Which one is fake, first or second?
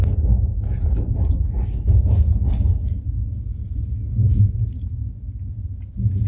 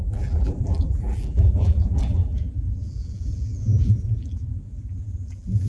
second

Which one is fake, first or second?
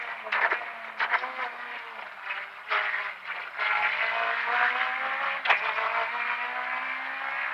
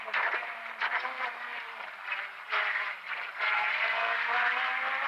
second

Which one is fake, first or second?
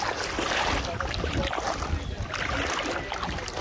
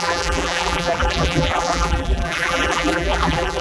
second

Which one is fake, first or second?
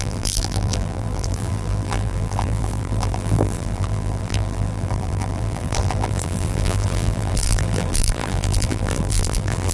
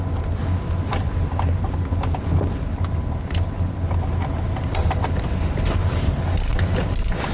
first